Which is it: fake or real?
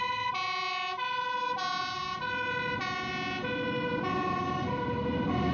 real